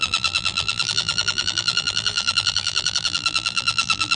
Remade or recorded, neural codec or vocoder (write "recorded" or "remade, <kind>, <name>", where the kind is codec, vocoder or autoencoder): remade, vocoder, BigVGAN v2